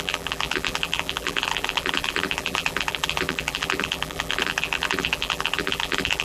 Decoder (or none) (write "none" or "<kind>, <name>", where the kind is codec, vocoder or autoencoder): vocoder, BigVGAN v2